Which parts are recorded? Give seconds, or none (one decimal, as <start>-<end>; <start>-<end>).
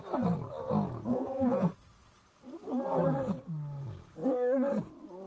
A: 0.0-1.1; 1.7-5.3